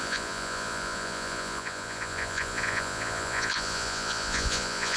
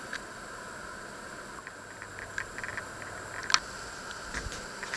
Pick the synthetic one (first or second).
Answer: first